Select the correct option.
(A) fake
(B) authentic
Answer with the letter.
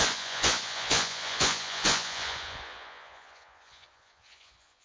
A